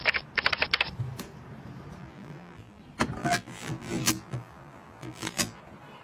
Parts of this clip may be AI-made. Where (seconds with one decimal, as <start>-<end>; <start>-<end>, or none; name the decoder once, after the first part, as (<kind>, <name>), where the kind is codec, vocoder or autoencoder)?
2.0-2.8 (vocoder, BigVGAN v2); 3.2-5.6